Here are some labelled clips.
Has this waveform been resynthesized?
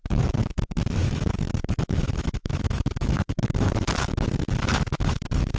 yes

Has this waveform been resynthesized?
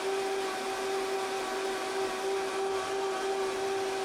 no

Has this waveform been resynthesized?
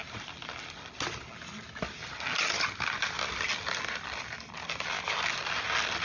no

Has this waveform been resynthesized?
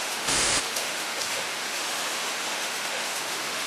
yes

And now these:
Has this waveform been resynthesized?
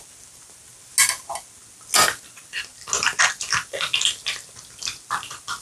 no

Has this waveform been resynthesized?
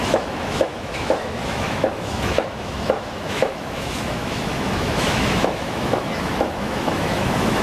yes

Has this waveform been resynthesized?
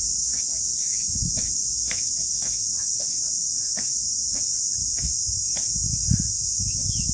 yes